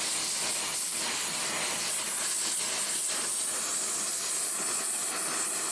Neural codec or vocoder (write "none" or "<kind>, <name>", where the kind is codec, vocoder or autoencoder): none